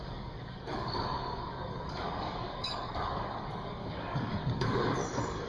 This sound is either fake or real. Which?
fake